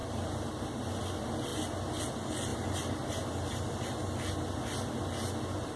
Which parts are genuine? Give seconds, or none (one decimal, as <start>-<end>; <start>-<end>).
1.0-2.5; 3.7-5.8